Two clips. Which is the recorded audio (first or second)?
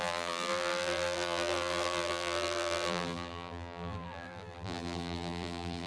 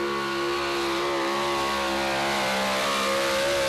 second